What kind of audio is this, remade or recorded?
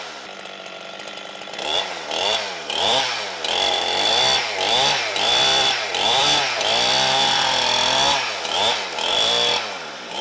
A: remade